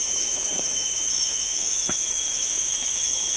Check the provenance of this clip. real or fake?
fake